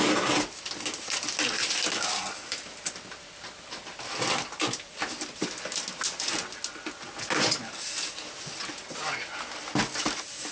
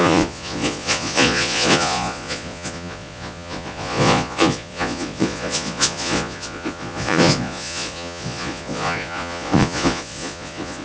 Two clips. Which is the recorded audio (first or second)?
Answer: first